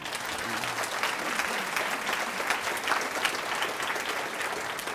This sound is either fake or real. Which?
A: real